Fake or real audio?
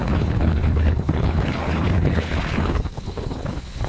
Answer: fake